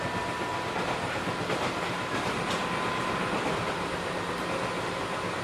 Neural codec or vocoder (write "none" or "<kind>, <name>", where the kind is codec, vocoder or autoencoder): none